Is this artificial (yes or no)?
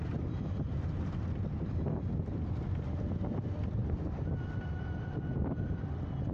no